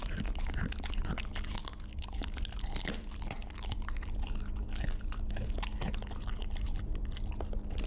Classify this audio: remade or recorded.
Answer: recorded